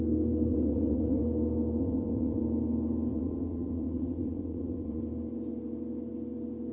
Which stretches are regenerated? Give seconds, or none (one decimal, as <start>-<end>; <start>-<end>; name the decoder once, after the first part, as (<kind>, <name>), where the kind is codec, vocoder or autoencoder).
0.5-1.2 (vocoder, WaveNeXt); 1.8-2.4; 3.1-5.0